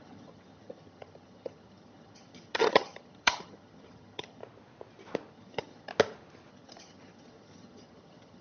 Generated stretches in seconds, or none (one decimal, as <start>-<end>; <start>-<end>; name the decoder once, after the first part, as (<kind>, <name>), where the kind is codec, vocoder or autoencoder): 0.0-4.4 (vocoder, HiFi-GAN); 5.3-5.9; 6.5-8.4